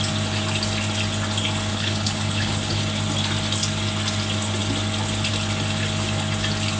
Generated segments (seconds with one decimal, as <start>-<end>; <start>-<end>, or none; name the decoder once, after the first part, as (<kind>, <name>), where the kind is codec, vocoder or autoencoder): 1.7-2.8 (codec, HILCodec)

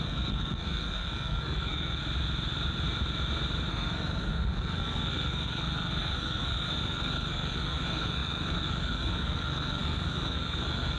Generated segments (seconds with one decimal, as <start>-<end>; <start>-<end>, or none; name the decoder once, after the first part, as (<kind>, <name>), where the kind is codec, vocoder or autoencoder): 0.0-2.0 (codec, SNAC); 3.7-11.0

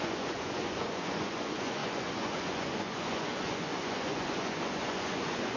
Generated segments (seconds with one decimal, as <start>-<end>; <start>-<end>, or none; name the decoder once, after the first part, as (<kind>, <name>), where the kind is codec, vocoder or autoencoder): 0.0-5.6 (vocoder, Vocos)